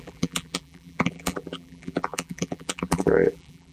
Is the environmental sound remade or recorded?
remade